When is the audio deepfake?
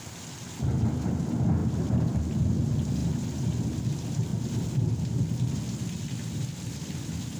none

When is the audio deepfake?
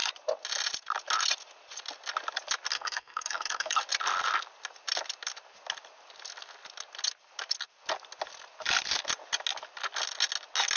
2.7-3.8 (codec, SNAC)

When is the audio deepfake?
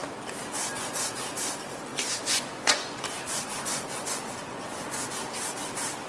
0.6-1.2 (vocoder, Vocos); 1.9-5.2